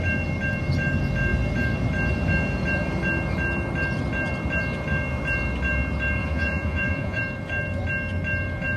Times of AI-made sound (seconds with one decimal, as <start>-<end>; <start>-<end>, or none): 6.2-7.2